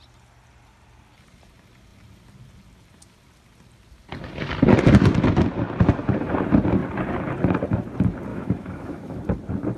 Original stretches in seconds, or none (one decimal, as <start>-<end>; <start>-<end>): 0.0-8.3; 9.2-9.8